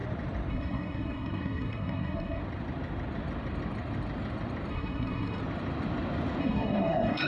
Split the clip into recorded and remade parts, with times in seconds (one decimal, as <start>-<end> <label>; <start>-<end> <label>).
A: 0.0-0.5 recorded; 0.5-2.4 remade; 2.4-4.7 recorded; 4.7-5.4 remade; 5.4-6.4 recorded; 6.4-7.3 remade